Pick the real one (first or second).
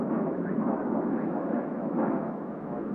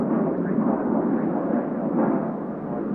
second